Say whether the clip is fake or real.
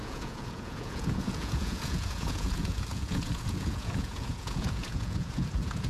fake